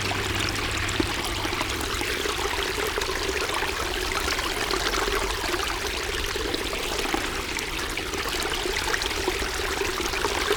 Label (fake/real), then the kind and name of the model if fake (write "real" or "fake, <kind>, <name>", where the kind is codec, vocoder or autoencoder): real